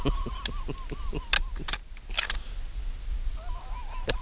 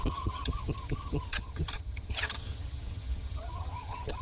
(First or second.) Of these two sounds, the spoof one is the second